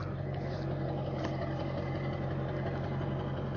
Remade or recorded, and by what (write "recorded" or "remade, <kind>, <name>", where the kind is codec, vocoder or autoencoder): recorded